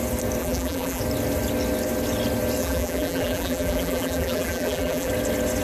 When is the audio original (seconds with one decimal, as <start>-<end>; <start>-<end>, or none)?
0.0-0.4; 1.0-2.6; 5.1-5.6